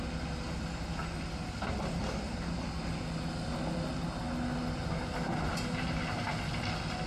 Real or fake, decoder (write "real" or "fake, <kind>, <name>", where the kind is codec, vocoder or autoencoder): real